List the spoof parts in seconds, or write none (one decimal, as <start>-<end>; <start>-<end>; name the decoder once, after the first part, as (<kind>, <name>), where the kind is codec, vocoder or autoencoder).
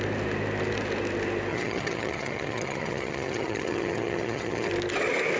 1.5-4.7 (vocoder, HiFi-GAN)